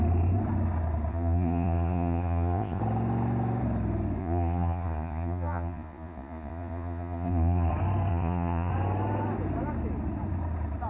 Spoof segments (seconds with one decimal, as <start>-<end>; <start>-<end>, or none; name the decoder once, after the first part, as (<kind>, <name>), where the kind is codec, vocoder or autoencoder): 1.1-2.8 (vocoder, Vocos); 4.2-7.7; 8.1-8.7